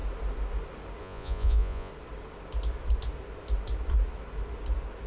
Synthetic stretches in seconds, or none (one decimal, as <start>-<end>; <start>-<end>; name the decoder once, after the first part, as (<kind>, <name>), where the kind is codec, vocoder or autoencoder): 1.0-1.9 (vocoder, Vocos)